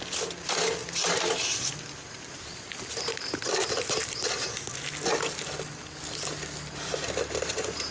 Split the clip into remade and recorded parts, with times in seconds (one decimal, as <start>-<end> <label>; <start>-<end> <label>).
0.0-7.9 recorded